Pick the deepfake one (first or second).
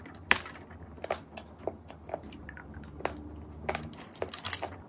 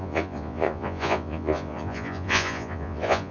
second